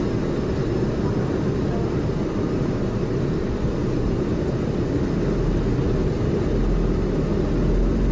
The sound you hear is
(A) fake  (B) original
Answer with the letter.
B